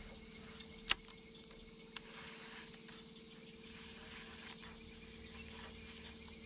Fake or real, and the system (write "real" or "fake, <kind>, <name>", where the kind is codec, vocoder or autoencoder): real